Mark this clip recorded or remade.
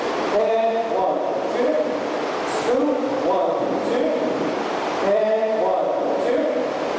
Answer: remade